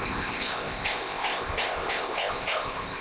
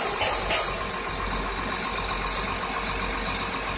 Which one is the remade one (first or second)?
first